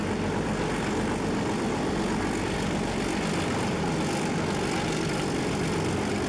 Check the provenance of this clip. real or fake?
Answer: real